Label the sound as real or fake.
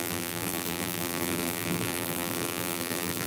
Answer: fake